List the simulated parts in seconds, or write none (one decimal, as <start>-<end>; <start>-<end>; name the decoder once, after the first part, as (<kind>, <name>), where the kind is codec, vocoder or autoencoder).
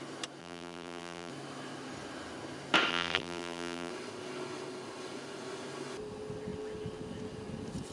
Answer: 0.4-1.3 (vocoder, BigVGAN v2); 2.9-3.9